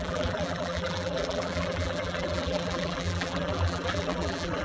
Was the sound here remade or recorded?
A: remade